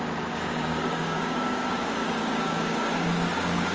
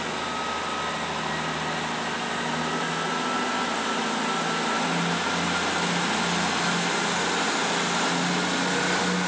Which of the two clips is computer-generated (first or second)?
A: first